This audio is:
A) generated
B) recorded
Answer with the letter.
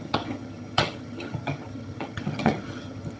A